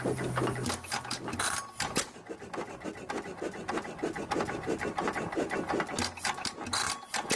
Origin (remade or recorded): recorded